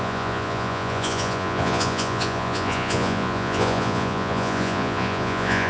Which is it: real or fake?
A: fake